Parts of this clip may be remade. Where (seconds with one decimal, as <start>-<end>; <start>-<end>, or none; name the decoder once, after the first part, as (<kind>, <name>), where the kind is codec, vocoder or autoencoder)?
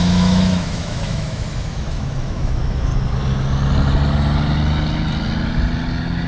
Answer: 0.0-2.9 (autoencoder, DAC-VAE)